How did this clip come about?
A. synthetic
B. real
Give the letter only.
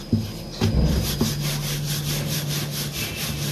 B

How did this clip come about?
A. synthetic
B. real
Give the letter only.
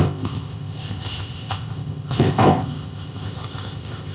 A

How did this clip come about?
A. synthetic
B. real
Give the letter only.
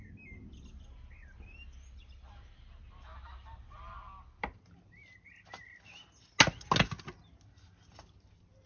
B